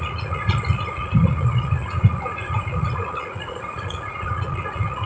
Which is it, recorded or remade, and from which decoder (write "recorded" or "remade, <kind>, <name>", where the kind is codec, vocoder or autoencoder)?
remade, vocoder, Vocos